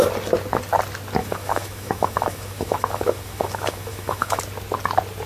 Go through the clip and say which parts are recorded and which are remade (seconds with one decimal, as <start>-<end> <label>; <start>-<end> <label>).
0.0-1.2 recorded; 1.2-4.4 remade; 4.4-5.3 recorded